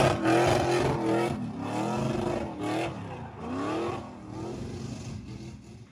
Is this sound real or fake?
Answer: real